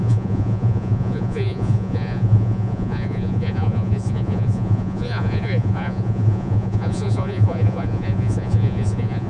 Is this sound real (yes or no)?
no